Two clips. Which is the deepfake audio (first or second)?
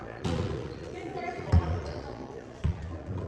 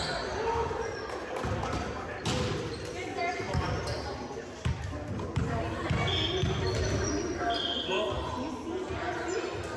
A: first